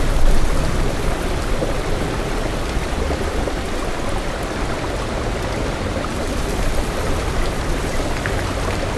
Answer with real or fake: real